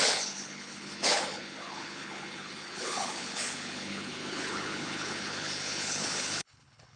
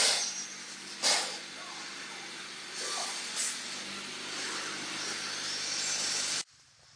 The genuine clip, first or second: second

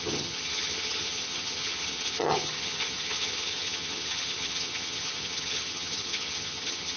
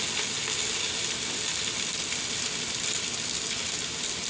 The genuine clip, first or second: second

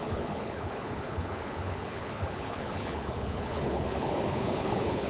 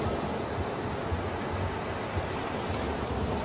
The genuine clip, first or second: second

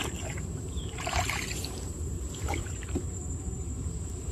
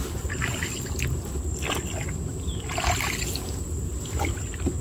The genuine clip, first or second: second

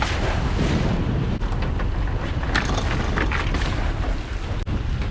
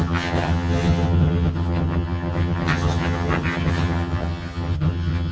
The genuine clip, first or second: first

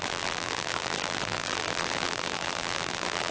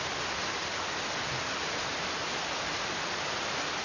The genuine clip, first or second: second